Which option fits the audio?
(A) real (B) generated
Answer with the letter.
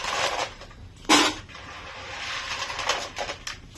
A